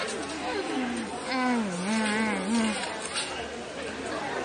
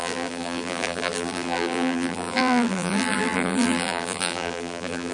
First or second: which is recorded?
first